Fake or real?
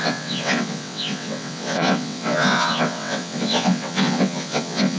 fake